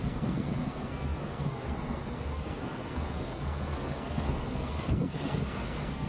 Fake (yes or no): yes